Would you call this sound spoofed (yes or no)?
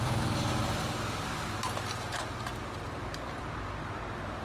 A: no